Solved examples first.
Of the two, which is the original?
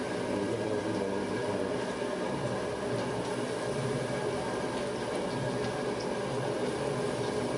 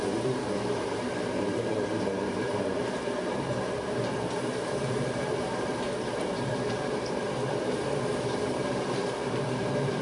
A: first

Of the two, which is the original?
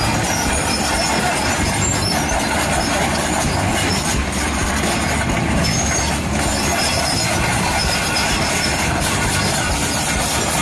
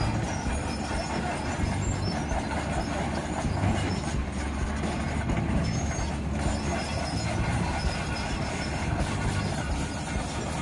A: second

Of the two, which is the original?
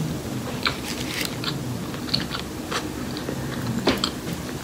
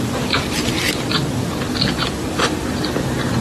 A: first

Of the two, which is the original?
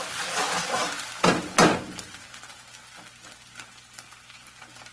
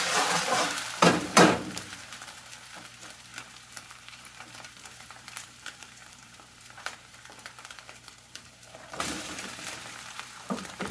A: first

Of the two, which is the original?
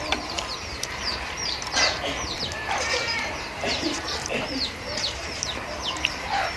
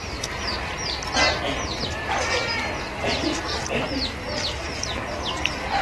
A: second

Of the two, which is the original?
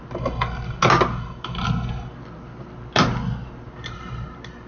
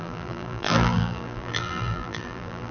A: first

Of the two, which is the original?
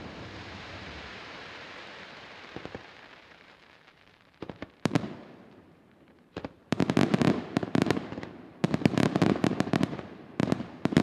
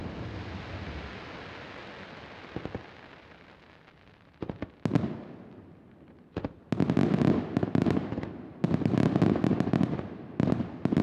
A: second